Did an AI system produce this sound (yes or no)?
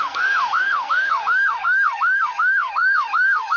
yes